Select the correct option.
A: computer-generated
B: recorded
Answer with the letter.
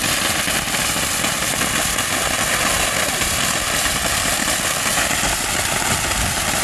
B